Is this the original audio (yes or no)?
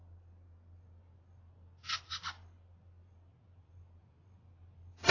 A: yes